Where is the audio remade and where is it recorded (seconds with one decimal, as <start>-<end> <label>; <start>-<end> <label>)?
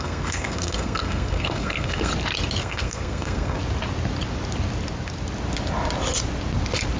0.0-2.1 remade; 2.1-2.6 recorded; 2.6-3.6 remade; 3.6-7.0 recorded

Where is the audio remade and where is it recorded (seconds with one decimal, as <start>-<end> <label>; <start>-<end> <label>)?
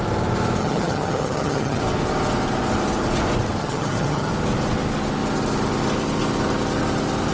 0.0-0.6 recorded; 0.6-1.8 remade; 1.8-3.6 recorded; 3.6-4.3 remade; 4.3-7.3 recorded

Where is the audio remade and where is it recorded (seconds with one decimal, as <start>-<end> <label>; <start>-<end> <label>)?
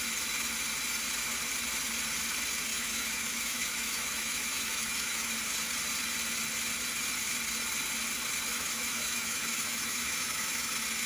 0.0-2.7 recorded; 2.7-5.3 remade; 5.3-8.5 recorded; 8.5-10.7 remade; 10.7-11.1 recorded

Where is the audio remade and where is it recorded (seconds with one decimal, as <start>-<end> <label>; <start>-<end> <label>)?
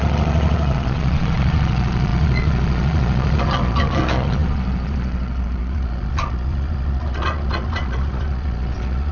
0.0-9.1 remade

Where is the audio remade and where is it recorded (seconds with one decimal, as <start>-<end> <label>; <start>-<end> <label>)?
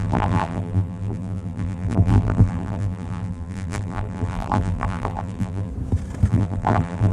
0.0-5.7 remade; 5.7-6.3 recorded; 6.3-7.1 remade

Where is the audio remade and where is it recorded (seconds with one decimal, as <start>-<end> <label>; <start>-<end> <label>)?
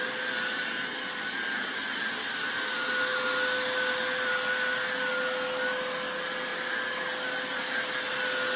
0.0-8.6 recorded